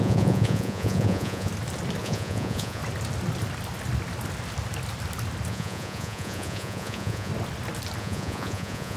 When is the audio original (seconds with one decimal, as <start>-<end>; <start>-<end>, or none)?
1.5-2.0; 2.8-5.5; 7.3-8.0